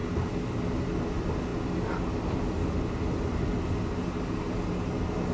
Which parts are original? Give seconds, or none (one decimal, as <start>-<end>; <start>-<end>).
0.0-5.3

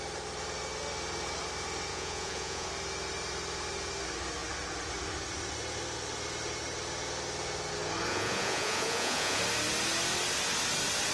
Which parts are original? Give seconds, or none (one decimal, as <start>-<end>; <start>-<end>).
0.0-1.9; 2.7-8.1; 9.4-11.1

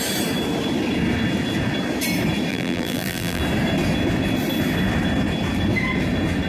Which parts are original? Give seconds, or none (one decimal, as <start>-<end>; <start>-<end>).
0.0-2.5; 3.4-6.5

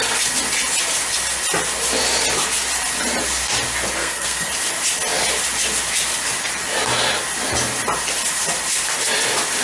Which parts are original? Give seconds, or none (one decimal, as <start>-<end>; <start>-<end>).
0.0-4.0; 4.5-9.6

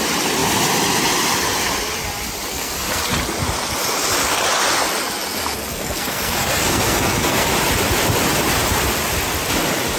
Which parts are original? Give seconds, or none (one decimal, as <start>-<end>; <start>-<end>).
0.0-2.5; 3.0-5.7; 7.5-10.0

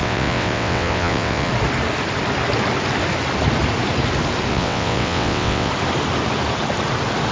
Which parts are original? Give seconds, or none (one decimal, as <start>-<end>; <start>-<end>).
1.5-4.5; 5.7-7.3

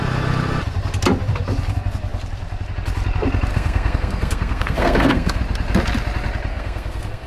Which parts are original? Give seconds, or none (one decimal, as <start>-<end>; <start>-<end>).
0.0-3.5; 5.4-6.5

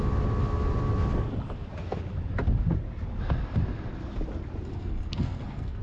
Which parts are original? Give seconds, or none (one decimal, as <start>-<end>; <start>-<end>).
0.0-4.7